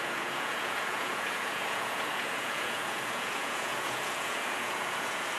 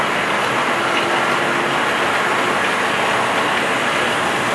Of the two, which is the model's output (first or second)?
first